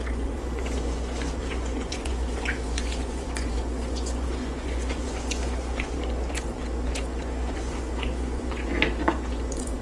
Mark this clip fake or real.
fake